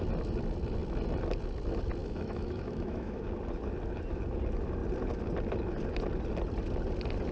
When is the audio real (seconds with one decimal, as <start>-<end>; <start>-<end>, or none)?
0.0-2.0; 3.2-7.3